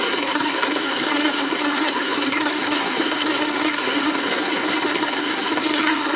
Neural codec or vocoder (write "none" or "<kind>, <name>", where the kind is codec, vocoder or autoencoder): codec, SNAC